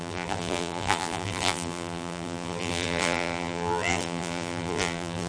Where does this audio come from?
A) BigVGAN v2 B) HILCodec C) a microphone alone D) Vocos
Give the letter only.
A